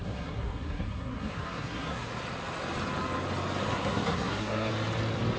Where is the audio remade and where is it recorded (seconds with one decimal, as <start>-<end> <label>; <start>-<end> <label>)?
0.0-2.1 remade; 2.1-3.7 recorded; 3.7-4.7 remade; 4.7-5.4 recorded